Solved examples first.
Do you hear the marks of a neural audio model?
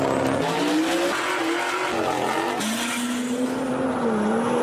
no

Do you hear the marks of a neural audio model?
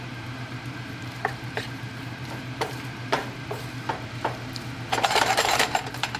yes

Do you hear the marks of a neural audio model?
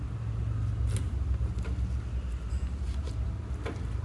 no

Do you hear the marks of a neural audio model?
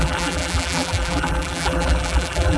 yes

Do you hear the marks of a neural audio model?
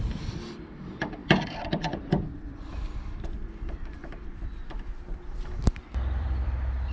yes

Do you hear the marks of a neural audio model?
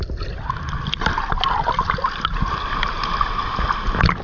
no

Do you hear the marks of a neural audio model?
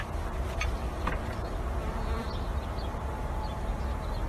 yes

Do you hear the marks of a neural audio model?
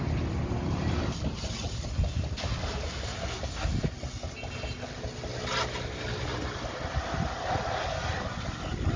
no